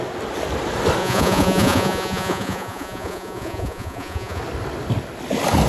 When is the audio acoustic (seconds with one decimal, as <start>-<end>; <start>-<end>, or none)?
0.0-1.0; 4.4-5.7